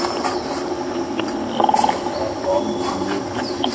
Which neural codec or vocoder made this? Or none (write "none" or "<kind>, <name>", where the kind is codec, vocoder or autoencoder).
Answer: none